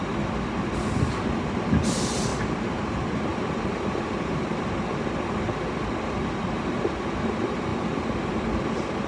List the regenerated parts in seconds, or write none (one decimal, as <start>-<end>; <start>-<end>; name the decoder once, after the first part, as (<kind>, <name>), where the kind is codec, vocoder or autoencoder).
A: 2.3-4.7 (vocoder, BigVGAN v2)